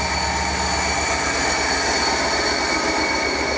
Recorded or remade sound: recorded